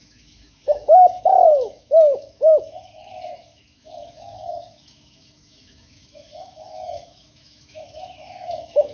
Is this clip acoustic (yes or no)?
no